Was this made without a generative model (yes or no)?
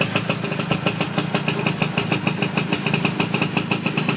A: yes